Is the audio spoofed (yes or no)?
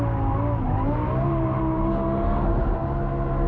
no